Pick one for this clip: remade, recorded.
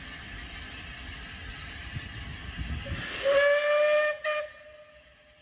recorded